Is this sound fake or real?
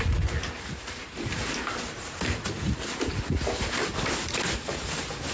real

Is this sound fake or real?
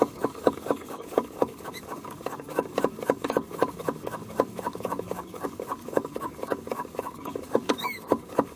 fake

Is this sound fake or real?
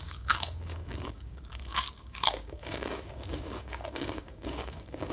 fake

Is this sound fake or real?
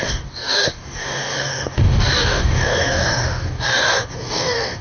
fake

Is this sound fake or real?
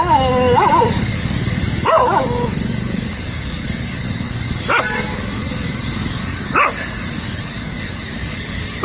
fake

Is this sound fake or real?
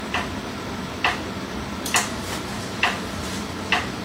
real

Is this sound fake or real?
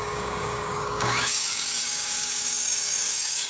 fake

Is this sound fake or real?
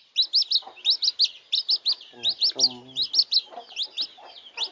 real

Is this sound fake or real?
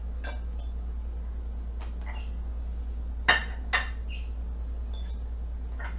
real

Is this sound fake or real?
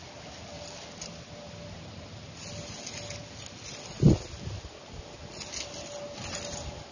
real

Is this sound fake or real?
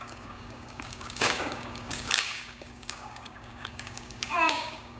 fake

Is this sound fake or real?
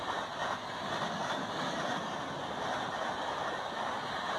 real